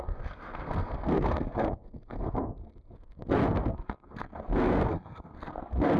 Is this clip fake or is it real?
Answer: fake